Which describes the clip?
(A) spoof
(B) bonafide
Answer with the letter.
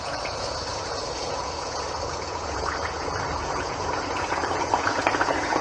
A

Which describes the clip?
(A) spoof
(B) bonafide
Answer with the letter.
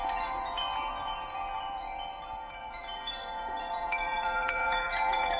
A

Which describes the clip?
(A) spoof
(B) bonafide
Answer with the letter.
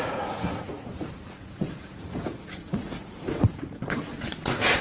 A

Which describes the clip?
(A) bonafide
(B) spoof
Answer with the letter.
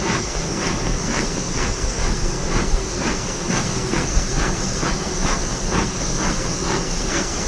B